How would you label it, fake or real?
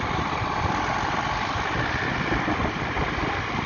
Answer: real